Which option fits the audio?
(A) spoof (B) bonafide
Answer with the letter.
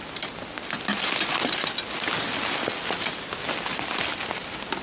B